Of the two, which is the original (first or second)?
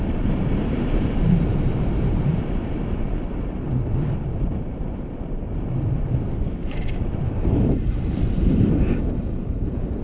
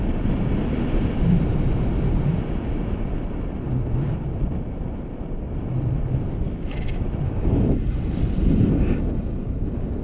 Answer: second